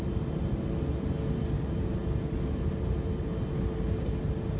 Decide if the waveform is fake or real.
real